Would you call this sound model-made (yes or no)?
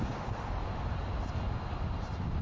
no